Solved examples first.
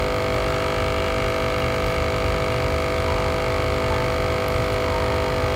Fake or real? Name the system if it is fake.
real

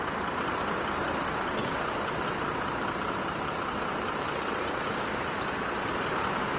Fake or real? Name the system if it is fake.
real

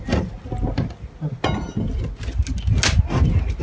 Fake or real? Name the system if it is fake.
real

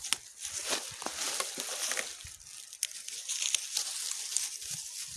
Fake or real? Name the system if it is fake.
real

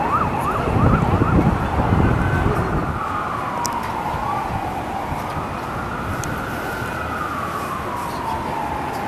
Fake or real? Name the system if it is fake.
real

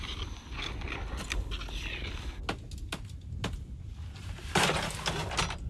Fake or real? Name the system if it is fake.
real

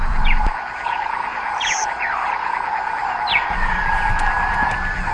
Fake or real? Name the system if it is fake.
fake, vocoder, BigVGAN v2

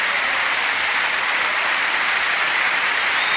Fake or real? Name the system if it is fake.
fake, vocoder, BigVGAN v2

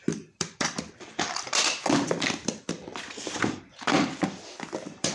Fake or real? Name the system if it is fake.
fake, vocoder, BigVGAN v2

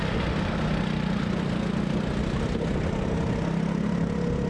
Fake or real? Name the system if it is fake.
real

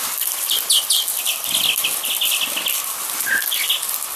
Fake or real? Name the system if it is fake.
real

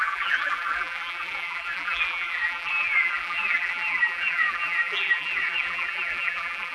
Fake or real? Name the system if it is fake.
fake, vocoder, BigVGAN v2